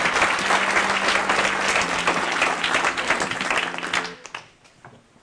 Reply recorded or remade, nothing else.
recorded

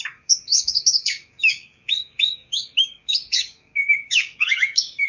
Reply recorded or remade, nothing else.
remade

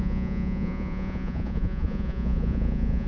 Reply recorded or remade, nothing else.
remade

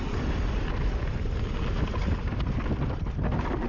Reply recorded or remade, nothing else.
recorded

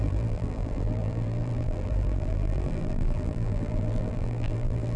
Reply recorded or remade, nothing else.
remade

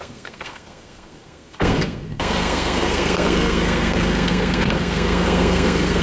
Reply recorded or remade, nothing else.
remade